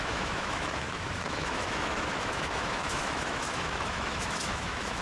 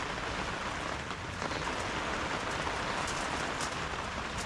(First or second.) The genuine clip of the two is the second